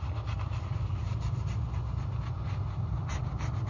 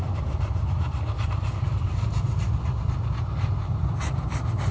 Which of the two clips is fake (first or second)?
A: second